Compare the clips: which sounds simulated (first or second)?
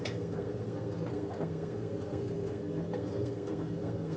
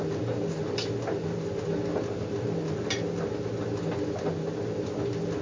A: first